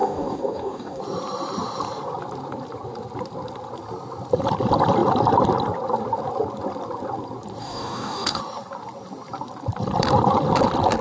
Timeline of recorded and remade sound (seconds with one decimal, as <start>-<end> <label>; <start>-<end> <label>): 0.0-1.0 remade; 1.0-7.6 recorded; 7.6-8.4 remade; 8.4-11.0 recorded